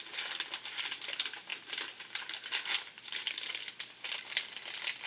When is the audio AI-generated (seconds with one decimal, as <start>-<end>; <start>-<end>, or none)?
none